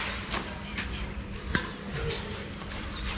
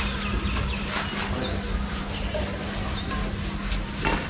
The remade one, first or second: first